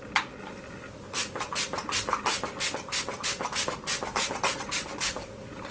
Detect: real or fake real